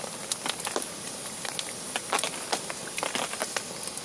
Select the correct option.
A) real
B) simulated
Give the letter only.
A